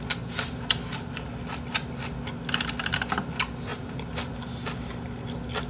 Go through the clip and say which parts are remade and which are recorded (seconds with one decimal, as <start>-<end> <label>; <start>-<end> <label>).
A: 0.0-3.7 recorded; 3.7-4.3 remade; 4.3-5.7 recorded